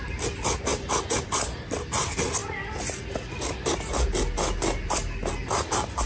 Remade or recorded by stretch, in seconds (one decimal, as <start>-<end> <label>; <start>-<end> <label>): 0.0-6.1 recorded

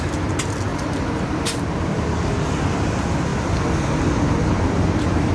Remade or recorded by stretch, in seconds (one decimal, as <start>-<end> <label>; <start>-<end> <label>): 0.0-0.7 recorded; 0.7-2.0 remade; 2.0-4.4 recorded; 4.4-5.3 remade

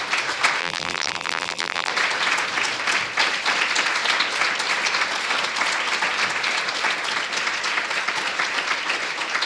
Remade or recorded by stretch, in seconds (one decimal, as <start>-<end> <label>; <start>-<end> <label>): 0.0-0.6 recorded; 0.6-1.9 remade; 1.9-9.5 recorded

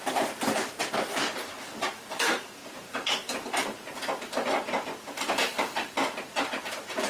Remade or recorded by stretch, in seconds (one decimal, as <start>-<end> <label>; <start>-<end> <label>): 0.0-7.1 remade

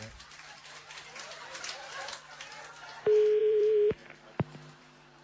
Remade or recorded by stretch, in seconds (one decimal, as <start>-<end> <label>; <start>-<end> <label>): 0.0-0.6 remade; 0.6-3.4 recorded; 3.4-4.0 remade; 4.0-4.8 recorded; 4.8-5.2 remade